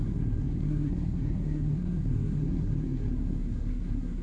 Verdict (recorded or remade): remade